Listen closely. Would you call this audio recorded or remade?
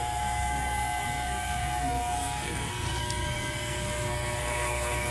remade